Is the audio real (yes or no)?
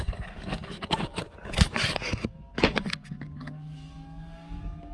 no